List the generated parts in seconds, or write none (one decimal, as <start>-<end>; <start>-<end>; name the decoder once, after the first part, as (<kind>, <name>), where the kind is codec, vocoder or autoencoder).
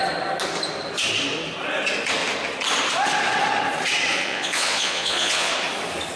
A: 4.1-5.5 (vocoder, Vocos)